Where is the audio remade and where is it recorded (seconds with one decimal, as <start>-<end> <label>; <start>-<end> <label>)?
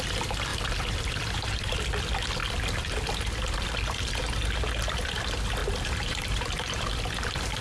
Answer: 0.0-0.5 recorded; 0.5-1.7 remade; 1.7-5.6 recorded; 5.6-6.9 remade; 6.9-7.6 recorded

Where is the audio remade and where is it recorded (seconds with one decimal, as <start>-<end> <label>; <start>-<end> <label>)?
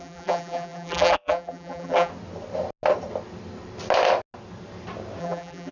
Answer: 0.0-2.1 remade; 2.1-5.2 recorded; 5.2-5.7 remade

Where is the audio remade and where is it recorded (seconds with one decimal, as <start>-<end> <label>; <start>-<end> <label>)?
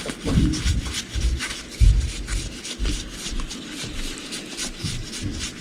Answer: 0.0-5.6 recorded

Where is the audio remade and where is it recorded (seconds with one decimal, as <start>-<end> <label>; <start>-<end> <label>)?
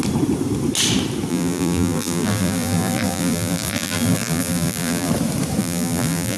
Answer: 0.0-1.3 recorded; 1.3-5.1 remade; 5.1-5.6 recorded; 5.6-6.4 remade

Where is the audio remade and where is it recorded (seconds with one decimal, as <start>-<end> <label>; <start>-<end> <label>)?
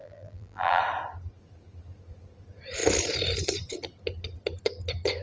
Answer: 0.0-0.8 remade; 0.8-5.2 recorded